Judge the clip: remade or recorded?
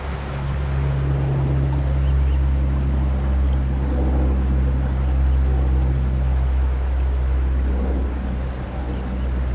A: recorded